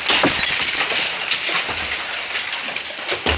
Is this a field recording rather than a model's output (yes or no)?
yes